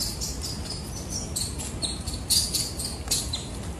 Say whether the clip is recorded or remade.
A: recorded